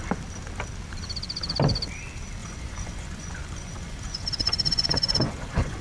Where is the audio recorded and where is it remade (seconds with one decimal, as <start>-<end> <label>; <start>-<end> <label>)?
0.0-2.4 recorded; 2.4-5.8 remade